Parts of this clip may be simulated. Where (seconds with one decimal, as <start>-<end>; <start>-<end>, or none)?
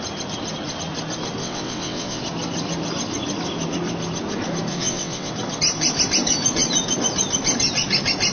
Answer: 1.4-2.2; 4.7-5.3